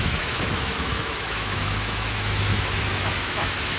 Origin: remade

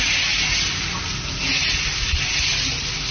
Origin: recorded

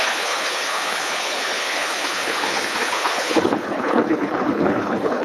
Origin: remade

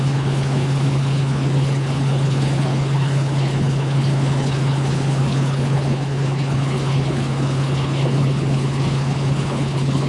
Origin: remade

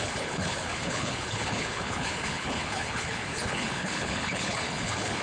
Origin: remade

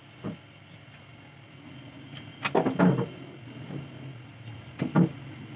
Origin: recorded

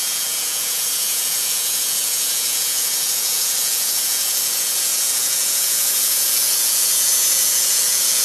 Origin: remade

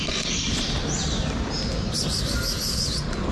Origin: recorded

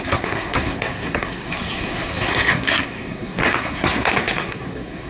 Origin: remade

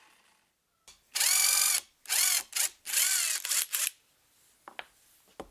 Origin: recorded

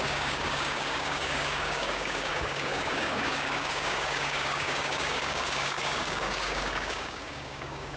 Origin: remade